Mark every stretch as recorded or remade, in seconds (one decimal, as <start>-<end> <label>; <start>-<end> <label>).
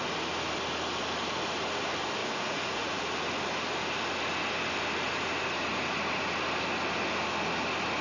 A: 0.0-2.2 recorded; 2.2-3.0 remade; 3.0-8.0 recorded